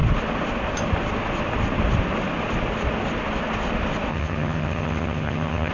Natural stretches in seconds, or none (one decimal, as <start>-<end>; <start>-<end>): 0.0-4.1